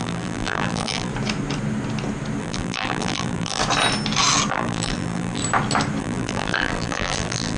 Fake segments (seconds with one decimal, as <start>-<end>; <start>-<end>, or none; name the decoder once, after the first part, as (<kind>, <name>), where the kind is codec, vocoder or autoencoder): 0.0-1.1 (vocoder, BigVGAN v2); 2.4-3.6; 4.5-5.4; 6.0-7.6